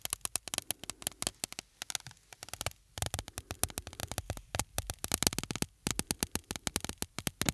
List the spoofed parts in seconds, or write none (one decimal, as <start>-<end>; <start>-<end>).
none